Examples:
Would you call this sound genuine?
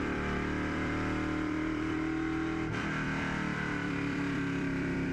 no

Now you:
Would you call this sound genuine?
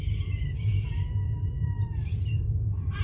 no